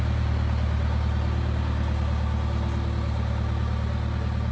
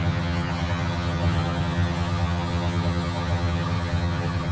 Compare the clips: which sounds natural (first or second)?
first